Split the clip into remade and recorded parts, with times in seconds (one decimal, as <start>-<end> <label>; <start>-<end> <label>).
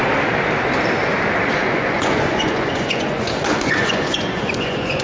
0.0-1.6 recorded; 1.6-5.0 remade